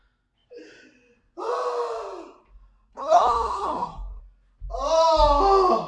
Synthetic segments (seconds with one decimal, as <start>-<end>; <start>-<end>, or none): 2.9-4.2